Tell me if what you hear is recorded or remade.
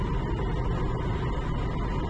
recorded